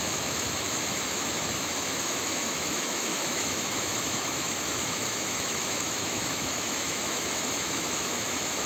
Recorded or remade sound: remade